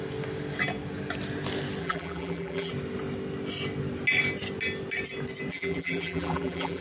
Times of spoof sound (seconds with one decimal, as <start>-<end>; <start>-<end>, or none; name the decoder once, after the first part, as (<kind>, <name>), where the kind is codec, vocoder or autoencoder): 1.8-2.7 (vocoder, BigVGAN v2); 5.5-6.8